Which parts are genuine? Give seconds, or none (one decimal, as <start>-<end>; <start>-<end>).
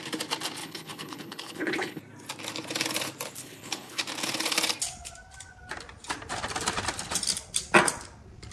0.0-0.6; 2.0-3.4; 4.0-8.5